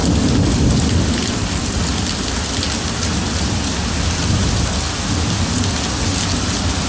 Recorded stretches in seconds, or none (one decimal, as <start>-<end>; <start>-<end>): 2.5-6.9